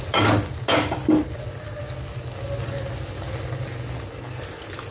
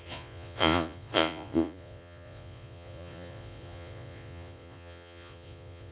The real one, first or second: first